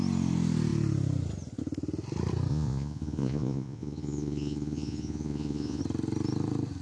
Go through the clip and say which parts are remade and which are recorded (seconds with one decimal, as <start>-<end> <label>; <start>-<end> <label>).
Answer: 0.0-2.5 recorded; 2.5-5.8 remade; 5.8-6.8 recorded